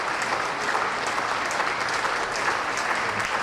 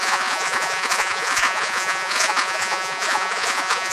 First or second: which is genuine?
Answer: first